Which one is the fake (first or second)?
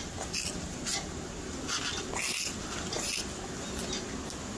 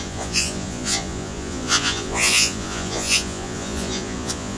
second